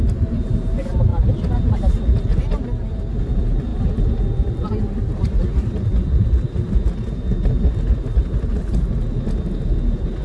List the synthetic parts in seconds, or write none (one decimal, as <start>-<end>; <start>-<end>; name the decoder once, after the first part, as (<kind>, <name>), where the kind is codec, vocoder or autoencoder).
none

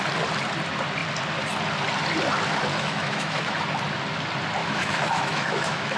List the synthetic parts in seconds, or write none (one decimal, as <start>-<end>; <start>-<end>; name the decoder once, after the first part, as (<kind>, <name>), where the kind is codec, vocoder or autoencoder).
2.7-3.5 (autoencoder, DAC-VAE); 4.6-6.0

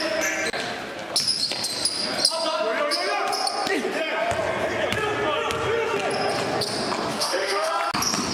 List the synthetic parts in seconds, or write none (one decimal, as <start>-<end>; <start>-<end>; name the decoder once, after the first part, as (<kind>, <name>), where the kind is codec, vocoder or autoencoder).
7.1-7.7 (autoencoder, DAC-VAE)

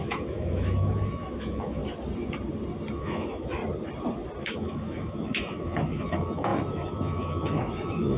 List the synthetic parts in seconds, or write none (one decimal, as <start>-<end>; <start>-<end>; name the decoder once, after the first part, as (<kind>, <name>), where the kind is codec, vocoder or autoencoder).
0.0-1.8 (autoencoder, DAC-VAE); 2.9-3.6; 4.4-8.2

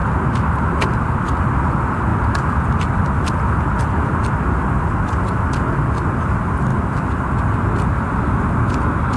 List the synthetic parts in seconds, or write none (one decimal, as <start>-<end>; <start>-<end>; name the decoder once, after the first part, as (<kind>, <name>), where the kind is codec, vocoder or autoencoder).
none